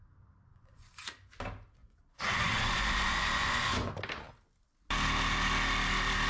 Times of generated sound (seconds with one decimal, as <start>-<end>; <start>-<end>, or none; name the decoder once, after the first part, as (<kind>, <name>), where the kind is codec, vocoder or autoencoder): 0.5-1.1 (vocoder, Vocos); 1.8-3.9